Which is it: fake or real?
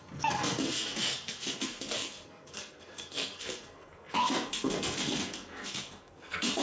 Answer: fake